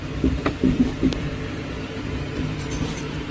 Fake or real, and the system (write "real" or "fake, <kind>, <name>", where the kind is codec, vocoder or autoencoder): fake, vocoder, BigVGAN v2